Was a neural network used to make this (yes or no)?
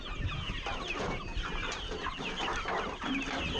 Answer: no